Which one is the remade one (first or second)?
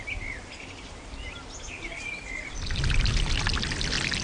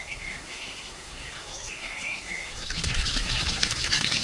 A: second